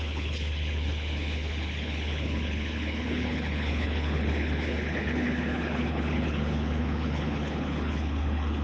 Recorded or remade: remade